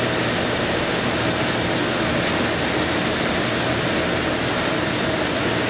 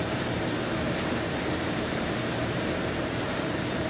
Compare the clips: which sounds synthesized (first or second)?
second